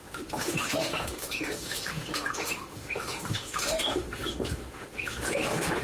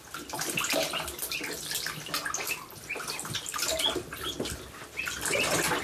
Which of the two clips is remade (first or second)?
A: first